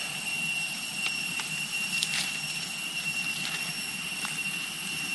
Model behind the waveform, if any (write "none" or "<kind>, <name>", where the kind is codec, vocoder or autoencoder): vocoder, BigVGAN v2